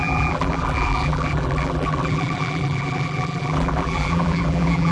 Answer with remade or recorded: remade